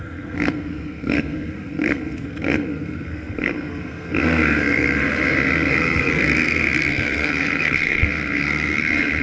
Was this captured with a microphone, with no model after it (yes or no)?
no